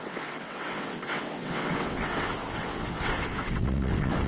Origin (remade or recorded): remade